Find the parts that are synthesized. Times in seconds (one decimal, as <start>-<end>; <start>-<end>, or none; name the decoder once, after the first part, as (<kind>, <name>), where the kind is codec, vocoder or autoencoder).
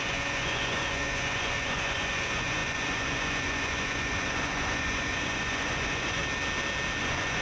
0.0-6.2 (vocoder, Vocos); 7.0-7.4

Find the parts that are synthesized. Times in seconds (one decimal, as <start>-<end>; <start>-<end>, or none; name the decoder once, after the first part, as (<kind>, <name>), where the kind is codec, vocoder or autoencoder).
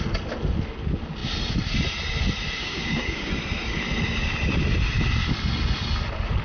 2.6-3.3 (codec, DAC)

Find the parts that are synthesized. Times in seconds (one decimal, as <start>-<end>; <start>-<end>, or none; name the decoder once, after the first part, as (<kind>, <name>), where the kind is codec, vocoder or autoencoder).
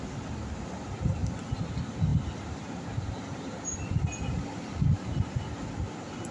1.2-1.7 (vocoder, BigVGAN v2); 2.1-4.8